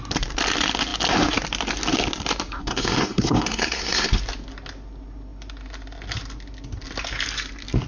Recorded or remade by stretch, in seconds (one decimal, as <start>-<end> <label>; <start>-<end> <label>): 0.0-2.6 recorded; 2.6-4.2 remade; 4.2-7.9 recorded